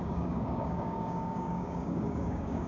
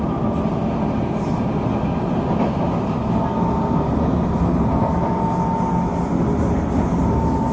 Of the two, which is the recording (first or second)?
second